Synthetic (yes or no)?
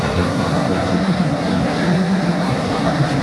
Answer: yes